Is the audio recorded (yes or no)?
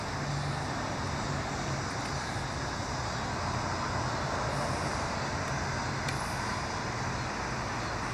yes